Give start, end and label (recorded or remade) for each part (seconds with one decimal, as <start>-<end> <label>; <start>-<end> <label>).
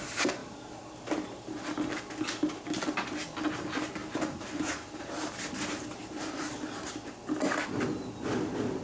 0.0-0.4 recorded; 0.4-1.5 remade; 1.5-4.0 recorded; 4.0-6.5 remade; 6.5-8.8 recorded